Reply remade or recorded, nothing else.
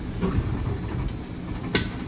recorded